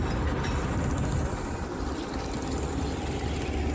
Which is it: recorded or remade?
recorded